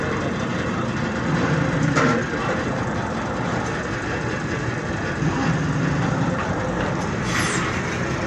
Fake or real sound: real